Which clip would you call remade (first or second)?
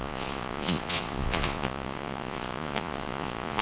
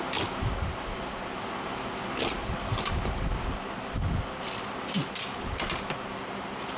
first